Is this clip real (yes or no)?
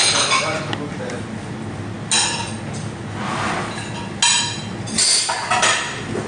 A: yes